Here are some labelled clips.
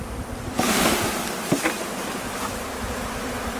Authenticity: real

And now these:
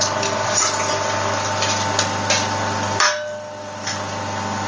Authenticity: real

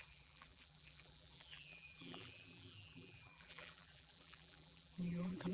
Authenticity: fake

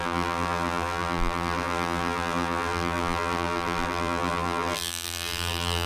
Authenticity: fake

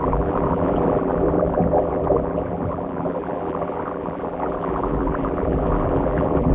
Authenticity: fake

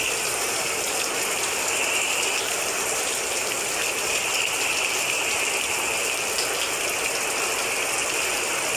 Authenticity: real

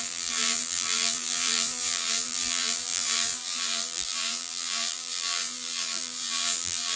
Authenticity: fake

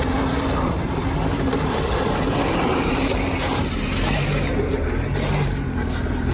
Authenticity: fake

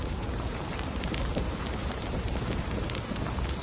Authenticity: fake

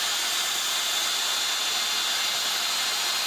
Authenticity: real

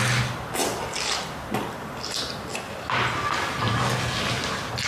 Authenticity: real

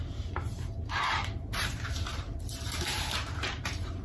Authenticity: fake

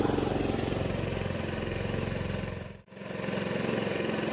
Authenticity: fake